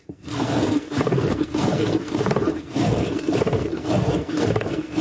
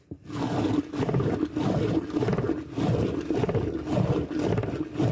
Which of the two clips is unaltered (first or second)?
second